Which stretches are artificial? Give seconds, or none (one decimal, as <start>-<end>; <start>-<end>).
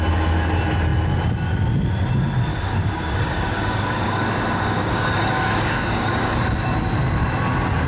2.5-6.4